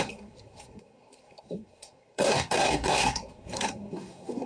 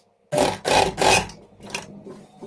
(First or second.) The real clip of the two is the second